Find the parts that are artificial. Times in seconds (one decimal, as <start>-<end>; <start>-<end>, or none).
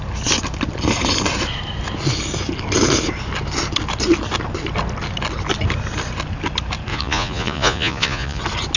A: 6.9-8.4